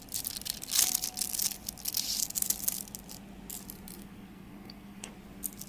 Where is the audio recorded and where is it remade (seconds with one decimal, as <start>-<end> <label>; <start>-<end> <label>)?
0.0-4.0 recorded; 4.0-5.1 remade; 5.1-5.7 recorded